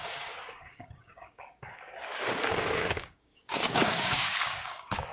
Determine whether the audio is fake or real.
fake